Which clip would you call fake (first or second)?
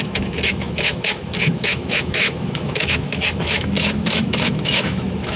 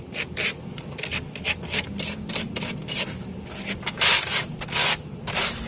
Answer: first